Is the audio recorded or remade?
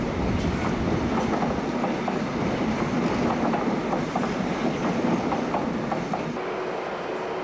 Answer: recorded